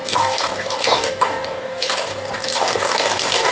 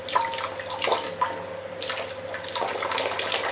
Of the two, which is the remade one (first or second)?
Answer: first